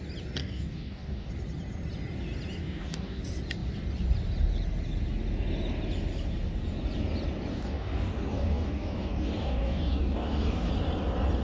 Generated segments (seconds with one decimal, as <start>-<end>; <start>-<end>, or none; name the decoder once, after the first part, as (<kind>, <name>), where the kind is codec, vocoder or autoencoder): 0.4-1.3 (codec, DAC); 2.6-3.2; 7.5-10.7